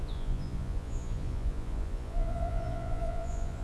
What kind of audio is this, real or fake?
fake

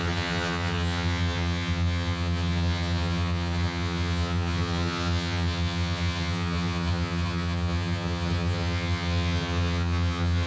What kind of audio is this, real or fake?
fake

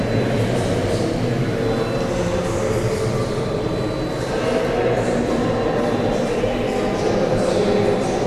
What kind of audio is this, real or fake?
real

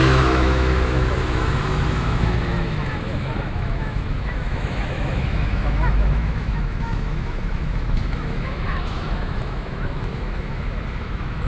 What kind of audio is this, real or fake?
fake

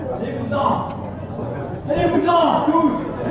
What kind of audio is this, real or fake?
fake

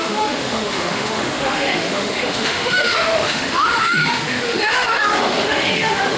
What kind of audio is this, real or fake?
fake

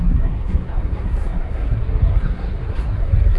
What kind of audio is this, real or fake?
fake